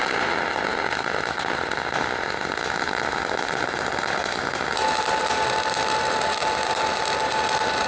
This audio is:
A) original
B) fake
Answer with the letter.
A